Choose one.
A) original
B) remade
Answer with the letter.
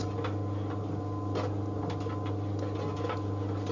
A